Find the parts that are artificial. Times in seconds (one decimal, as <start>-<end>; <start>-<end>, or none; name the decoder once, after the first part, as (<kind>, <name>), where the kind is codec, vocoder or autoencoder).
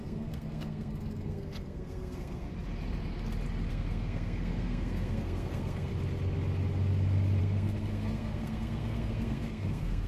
0.0-2.5 (codec, SNAC); 3.7-5.9; 7.4-10.1